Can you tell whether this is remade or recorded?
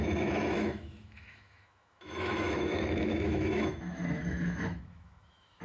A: remade